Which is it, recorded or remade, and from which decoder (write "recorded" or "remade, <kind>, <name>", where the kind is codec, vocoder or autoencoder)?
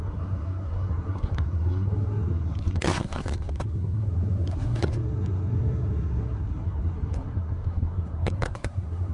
remade, codec, SNAC